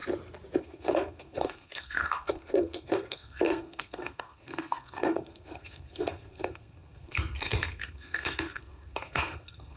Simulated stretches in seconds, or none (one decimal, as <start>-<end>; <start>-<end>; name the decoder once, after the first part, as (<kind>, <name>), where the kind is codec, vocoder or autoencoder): 0.6-9.8 (codec, SNAC)

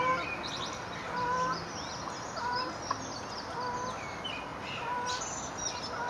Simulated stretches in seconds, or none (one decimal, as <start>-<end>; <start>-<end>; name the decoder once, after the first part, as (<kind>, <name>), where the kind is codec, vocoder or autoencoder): none

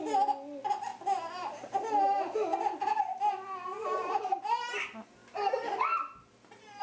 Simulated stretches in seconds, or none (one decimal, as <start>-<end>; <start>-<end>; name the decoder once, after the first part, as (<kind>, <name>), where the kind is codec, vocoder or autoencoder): none

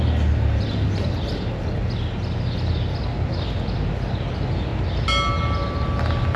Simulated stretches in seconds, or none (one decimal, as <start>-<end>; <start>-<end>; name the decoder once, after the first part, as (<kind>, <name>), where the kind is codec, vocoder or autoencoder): none

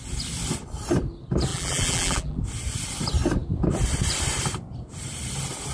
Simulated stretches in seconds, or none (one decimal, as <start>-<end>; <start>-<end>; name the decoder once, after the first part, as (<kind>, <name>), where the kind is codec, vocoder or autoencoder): 1.5-2.4 (vocoder, BigVGAN v2)

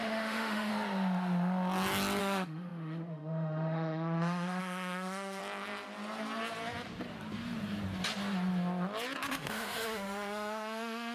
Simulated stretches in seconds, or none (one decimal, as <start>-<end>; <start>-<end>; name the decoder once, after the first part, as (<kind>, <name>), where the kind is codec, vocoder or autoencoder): 0.0-0.7 (autoencoder, DAC-VAE); 2.2-5.4; 9.3-11.1

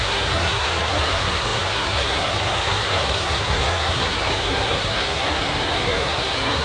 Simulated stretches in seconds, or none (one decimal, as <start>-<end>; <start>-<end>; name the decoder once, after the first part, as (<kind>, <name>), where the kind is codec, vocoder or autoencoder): 0.0-6.6 (codec, SNAC)